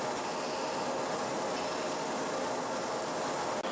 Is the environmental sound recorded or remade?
recorded